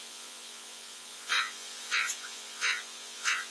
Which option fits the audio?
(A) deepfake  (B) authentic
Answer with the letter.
A